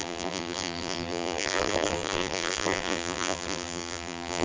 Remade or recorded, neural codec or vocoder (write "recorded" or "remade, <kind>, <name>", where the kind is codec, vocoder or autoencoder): remade, vocoder, BigVGAN v2